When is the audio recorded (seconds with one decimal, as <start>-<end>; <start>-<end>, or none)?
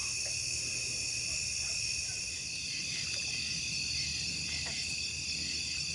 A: 0.0-5.9